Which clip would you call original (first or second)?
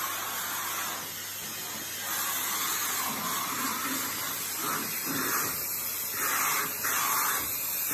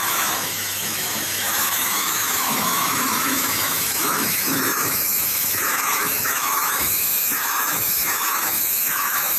first